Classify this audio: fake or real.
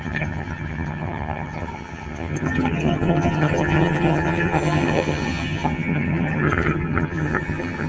fake